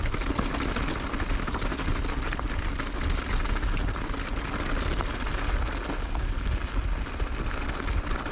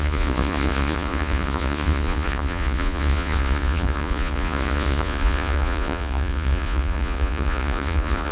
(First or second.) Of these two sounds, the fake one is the second